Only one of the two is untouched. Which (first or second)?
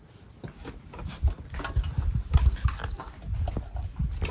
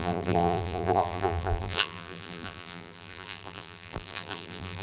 first